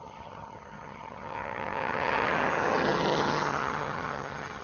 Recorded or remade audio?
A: remade